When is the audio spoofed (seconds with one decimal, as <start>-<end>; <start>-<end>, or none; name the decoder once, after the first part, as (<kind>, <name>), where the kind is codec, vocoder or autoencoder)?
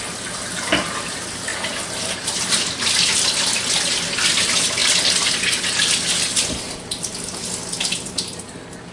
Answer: none